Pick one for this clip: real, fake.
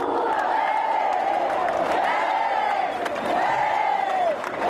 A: fake